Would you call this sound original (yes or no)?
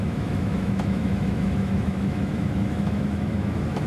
no